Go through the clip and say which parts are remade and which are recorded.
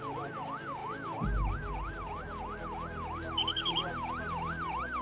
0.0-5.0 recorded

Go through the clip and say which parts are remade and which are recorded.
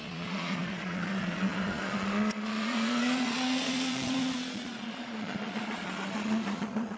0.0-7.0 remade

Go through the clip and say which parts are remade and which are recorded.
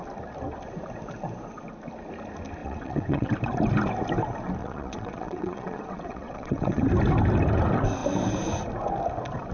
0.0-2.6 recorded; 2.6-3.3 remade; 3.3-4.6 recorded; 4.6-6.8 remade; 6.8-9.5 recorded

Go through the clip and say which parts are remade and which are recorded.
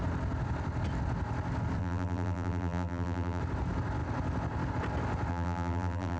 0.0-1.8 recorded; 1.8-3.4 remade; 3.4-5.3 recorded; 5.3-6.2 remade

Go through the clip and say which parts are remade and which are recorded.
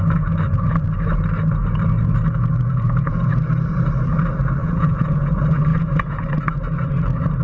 0.0-2.7 recorded; 2.7-3.3 remade; 3.3-4.6 recorded; 4.6-5.3 remade; 5.3-5.7 recorded; 5.7-6.4 remade; 6.4-7.4 recorded